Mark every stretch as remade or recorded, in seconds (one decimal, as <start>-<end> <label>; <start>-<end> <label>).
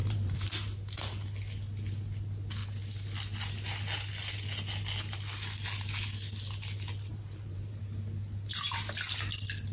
0.0-0.5 remade; 0.5-7.1 recorded; 7.1-7.8 remade; 7.8-9.7 recorded